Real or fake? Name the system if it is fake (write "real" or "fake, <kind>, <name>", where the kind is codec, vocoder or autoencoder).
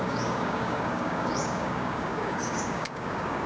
fake, codec, DAC